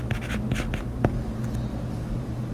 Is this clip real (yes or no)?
yes